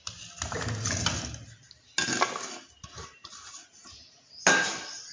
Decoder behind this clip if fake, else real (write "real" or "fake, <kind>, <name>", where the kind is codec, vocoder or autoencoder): real